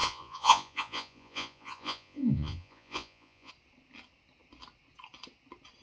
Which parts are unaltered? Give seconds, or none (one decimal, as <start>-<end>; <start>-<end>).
3.5-5.8